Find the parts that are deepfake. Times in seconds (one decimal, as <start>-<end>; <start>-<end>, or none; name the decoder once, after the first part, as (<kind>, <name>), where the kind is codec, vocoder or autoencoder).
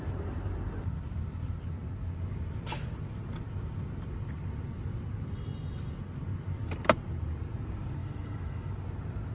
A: 8.0-8.7 (autoencoder, DAC-VAE)